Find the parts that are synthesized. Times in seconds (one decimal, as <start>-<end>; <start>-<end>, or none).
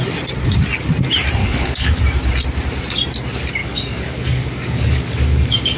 1.4-2.0; 3.6-5.8